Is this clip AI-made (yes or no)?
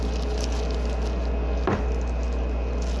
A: no